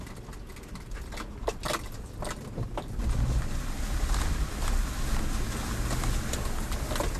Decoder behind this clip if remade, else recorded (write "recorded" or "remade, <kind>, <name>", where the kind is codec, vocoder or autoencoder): recorded